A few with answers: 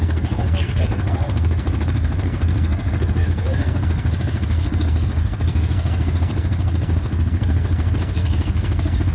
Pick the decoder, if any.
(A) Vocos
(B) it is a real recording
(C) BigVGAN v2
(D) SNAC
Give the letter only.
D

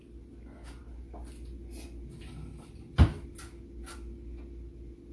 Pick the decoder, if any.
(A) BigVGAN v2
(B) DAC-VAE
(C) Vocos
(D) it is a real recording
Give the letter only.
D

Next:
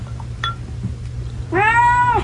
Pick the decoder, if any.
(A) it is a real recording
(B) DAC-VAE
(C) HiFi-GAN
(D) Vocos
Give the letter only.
A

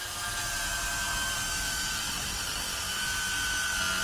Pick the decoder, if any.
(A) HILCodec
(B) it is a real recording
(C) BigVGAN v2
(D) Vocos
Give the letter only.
B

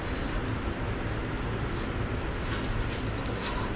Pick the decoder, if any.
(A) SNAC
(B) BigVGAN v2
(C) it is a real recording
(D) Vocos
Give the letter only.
C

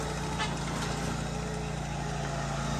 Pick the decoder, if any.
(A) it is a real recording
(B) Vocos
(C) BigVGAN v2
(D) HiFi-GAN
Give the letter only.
A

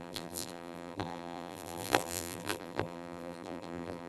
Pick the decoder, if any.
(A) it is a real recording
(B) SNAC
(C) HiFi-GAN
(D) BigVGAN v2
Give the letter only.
D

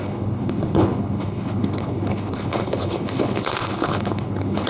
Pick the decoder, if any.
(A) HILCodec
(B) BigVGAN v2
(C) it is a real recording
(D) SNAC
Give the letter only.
A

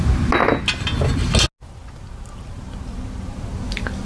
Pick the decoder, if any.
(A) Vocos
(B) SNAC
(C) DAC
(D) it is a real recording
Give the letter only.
D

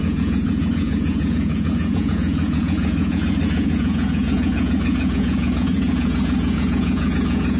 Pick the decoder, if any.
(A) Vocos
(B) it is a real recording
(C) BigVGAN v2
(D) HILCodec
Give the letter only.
A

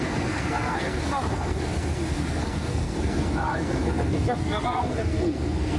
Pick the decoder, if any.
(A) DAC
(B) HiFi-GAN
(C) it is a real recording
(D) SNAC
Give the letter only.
D